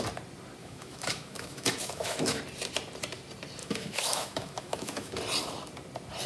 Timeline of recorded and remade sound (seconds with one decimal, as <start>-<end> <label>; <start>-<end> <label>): 0.0-0.6 recorded; 0.6-2.4 remade; 2.4-3.6 recorded; 3.6-5.2 remade; 5.2-6.3 recorded